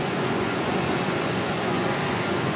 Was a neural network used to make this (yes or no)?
yes